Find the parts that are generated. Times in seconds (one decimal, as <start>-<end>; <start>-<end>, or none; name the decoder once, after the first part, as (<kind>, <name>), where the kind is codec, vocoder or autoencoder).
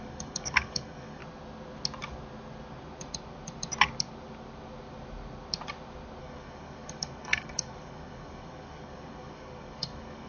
0.0-1.2 (codec, DAC); 6.2-10.3